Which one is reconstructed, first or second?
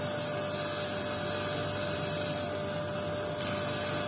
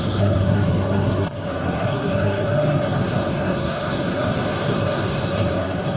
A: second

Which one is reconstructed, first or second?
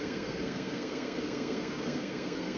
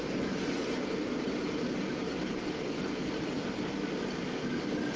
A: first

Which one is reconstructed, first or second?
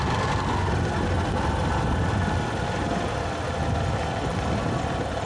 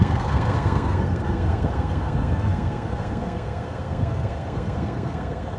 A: second